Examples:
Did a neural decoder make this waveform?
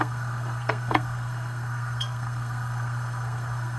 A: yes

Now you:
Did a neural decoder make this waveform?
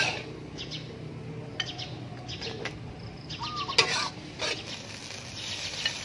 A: no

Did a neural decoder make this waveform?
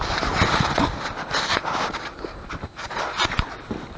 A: no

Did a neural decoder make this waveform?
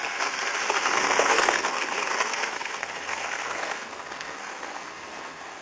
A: yes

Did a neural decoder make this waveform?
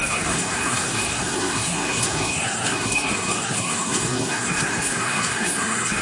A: yes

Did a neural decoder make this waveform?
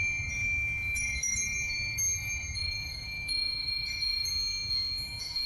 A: yes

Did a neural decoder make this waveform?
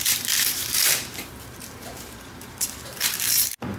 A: yes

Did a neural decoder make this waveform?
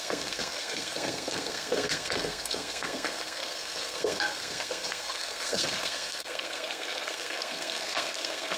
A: yes